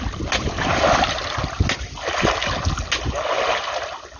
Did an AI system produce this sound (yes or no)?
no